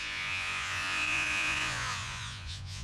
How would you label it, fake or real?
fake